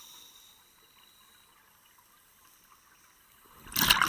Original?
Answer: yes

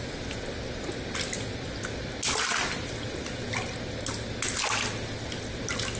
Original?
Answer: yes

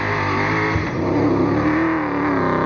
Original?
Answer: yes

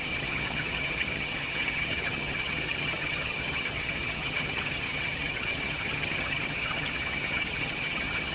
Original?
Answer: no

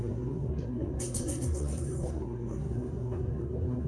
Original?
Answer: no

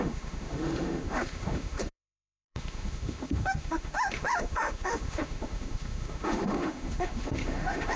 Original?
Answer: no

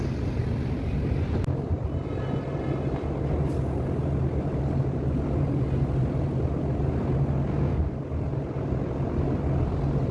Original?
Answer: yes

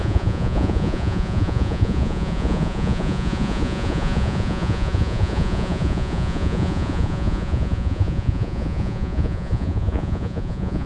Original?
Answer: no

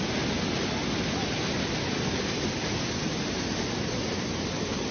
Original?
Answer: yes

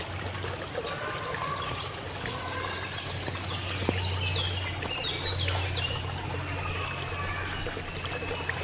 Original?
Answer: yes